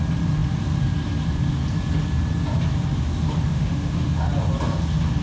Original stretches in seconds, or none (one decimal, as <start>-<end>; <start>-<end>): 0.0-3.5; 4.3-5.2